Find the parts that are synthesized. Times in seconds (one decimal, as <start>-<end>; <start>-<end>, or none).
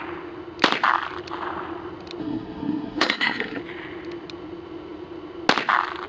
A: 2.2-3.6